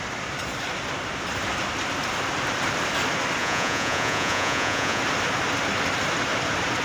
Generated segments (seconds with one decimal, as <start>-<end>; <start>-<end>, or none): 3.4-5.0

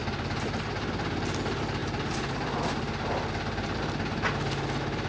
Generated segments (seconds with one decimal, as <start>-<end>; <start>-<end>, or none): none

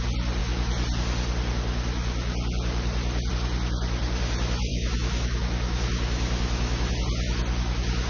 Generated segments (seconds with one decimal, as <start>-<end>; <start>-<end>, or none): 4.7-6.9

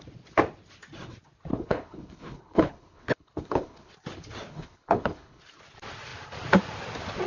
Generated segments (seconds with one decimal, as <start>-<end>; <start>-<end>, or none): 1.5-3.9; 4.5-5.4

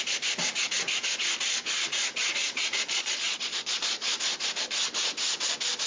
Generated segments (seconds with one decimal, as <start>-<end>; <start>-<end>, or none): 2.4-4.1

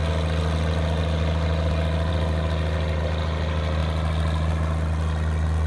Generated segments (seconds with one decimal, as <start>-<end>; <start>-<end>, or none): none

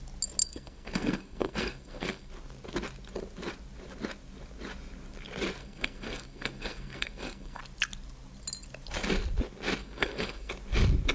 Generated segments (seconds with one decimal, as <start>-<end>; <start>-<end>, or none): 0.4-2.3; 5.6-7.6; 9.8-10.5

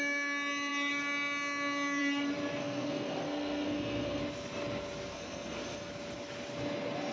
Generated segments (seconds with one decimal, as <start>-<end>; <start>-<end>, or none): 2.6-4.2; 5.1-5.9